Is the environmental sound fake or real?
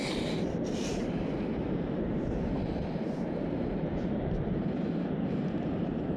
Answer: fake